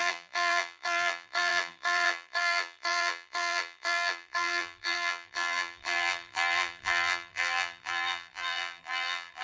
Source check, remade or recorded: remade